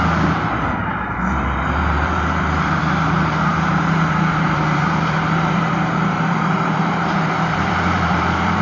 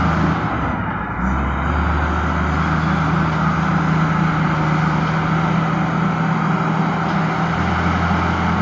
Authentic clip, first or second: second